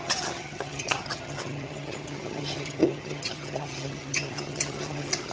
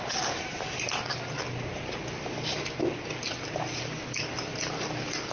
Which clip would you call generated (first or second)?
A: first